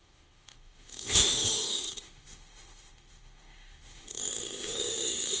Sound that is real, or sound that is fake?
fake